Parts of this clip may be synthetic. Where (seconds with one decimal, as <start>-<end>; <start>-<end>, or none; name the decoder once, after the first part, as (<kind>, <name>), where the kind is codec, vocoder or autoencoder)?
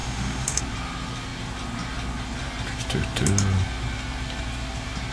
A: 0.0-0.6 (autoencoder, DAC-VAE)